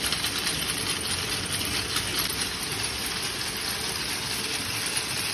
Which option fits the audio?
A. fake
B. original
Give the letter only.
B